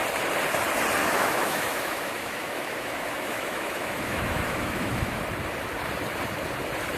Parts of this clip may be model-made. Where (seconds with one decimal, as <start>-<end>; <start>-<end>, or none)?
1.0-5.2